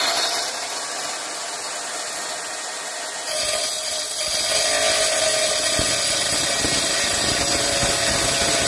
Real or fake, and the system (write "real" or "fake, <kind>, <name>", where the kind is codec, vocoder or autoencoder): real